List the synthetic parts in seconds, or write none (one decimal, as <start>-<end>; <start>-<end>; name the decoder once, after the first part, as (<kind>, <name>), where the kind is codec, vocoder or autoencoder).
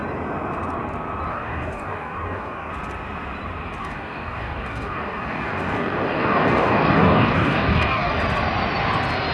1.3-2.7 (codec, DAC); 3.8-8.1